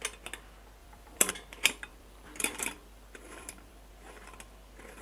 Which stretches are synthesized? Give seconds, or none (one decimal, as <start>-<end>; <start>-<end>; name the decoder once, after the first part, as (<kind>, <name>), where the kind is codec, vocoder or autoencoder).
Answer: 0.8-1.3 (vocoder, BigVGAN v2); 1.9-3.9